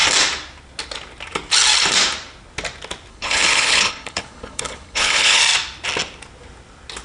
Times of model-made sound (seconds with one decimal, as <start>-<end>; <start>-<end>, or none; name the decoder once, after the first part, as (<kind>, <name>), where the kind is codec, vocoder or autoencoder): 3.1-5.4 (codec, HILCodec)